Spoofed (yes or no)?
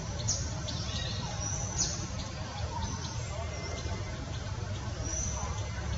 yes